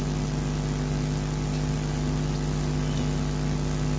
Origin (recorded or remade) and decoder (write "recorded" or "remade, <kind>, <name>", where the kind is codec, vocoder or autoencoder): recorded